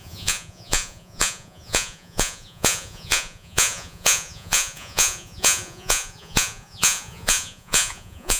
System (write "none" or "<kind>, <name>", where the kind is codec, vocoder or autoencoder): vocoder, Vocos